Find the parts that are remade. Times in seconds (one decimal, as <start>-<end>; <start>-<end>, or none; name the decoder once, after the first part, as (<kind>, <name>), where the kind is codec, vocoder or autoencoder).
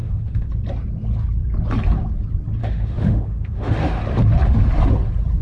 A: 0.0-0.5 (autoencoder, DAC-VAE); 2.6-4.0